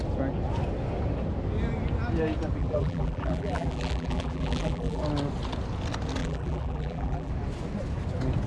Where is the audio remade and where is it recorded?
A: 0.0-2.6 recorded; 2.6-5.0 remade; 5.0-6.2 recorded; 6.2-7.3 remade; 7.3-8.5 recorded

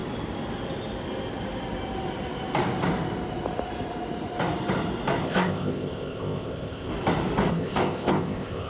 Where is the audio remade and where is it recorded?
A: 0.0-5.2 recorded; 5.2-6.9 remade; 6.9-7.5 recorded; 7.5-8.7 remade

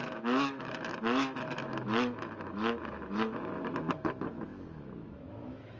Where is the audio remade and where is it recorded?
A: 0.0-5.8 remade